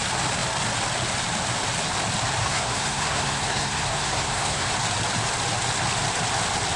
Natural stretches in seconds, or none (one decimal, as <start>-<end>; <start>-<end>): 0.0-2.4; 4.7-6.8